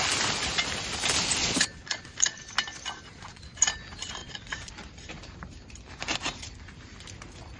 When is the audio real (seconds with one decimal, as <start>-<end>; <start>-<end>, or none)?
0.0-1.4; 2.4-3.1; 3.6-4.2; 4.7-7.6